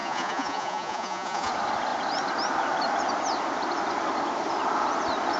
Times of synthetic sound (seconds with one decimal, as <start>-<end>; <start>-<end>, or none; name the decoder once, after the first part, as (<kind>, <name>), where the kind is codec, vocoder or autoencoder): 0.0-1.5 (vocoder, Vocos)